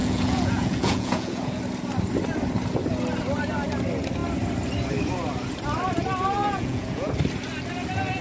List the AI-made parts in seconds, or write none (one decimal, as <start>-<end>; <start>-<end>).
0.0-1.6; 6.4-7.1